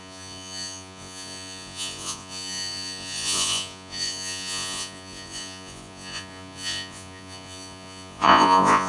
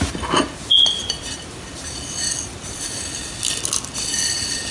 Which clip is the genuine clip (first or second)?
second